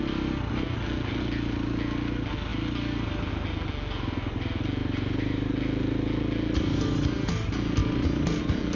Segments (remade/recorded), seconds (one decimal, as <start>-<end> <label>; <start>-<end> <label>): 0.0-4.8 recorded; 4.8-5.5 remade; 5.5-8.8 recorded